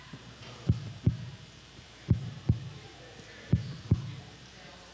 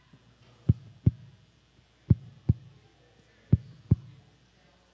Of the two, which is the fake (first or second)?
first